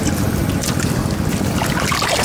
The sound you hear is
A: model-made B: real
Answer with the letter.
B